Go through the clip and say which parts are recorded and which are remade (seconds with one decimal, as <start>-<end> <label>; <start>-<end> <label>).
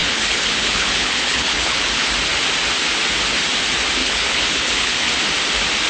0.0-2.1 remade; 2.1-4.0 recorded; 4.0-5.1 remade; 5.1-5.9 recorded